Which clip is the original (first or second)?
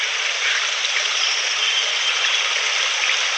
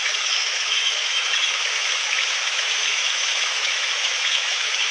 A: first